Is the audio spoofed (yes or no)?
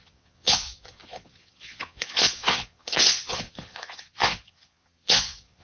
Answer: yes